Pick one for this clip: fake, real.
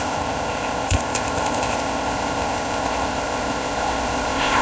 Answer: fake